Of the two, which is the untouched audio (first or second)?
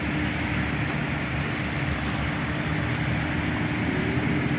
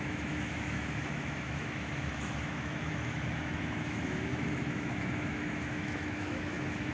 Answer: first